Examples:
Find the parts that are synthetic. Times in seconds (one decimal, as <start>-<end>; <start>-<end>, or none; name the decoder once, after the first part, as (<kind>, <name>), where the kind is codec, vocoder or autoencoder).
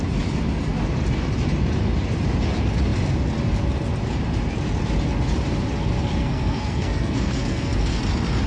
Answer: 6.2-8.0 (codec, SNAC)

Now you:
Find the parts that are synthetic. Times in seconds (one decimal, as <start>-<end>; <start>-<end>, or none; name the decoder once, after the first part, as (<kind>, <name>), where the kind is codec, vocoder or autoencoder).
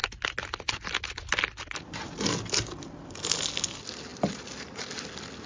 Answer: none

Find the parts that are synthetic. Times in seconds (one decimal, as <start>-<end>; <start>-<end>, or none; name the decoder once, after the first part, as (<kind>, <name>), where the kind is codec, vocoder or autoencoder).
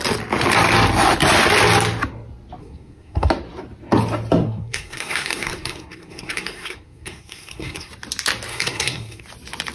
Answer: 2.6-3.3 (codec, SNAC); 4.4-7.9; 8.5-9.2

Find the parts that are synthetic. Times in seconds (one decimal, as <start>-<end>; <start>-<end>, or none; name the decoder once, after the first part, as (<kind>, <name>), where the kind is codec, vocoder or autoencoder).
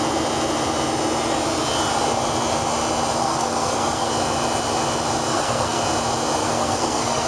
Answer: 3.2-4.1 (codec, SNAC); 5.3-5.8; 6.4-7.3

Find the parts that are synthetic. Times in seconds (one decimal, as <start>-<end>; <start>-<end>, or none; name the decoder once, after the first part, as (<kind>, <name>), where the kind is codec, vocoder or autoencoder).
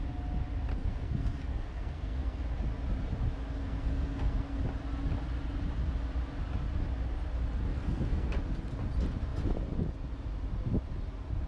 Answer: 0.7-2.4 (codec, SNAC); 3.6-4.6; 7.7-8.4